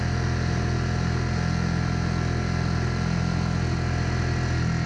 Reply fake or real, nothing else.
real